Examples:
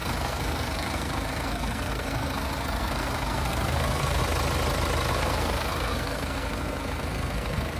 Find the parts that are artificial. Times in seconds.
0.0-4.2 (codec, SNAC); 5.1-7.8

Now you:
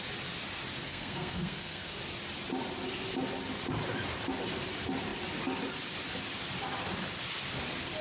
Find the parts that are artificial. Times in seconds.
0.9-2.0 (codec, SNAC)

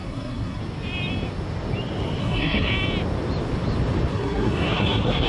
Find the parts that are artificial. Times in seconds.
0.0-0.6 (codec, SNAC); 2.2-2.7; 4.1-5.3

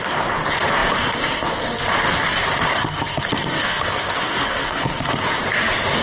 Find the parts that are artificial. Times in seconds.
2.7-5.1 (codec, SNAC)

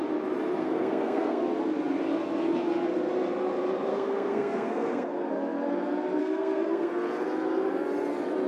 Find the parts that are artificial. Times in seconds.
0.6-1.4 (codec, SNAC); 3.9-5.3; 6.2-6.9

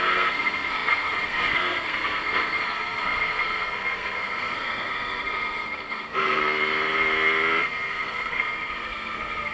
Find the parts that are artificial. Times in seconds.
0.0-6.4 (codec, SNAC); 7.6-9.5

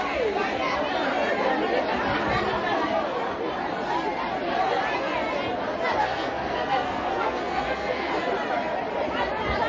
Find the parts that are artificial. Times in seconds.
6.0-8.1 (codec, SNAC)